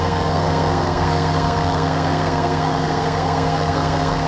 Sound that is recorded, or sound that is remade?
remade